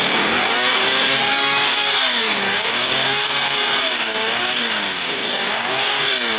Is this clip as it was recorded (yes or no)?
no